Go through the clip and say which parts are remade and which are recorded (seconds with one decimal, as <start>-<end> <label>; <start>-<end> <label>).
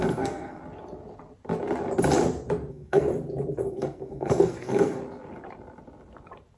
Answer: 0.0-0.6 remade; 0.6-2.7 recorded; 2.7-3.1 remade; 3.1-3.7 recorded; 3.7-5.0 remade; 5.0-6.6 recorded